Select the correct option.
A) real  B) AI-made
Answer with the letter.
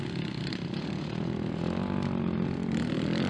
A